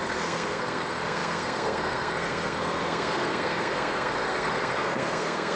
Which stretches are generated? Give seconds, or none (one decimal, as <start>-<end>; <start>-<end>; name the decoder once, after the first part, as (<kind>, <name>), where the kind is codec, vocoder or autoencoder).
0.0-5.5 (codec, SNAC)